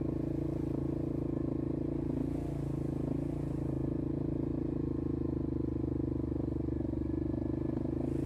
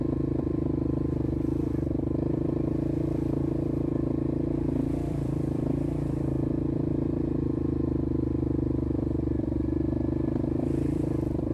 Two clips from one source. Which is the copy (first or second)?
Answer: second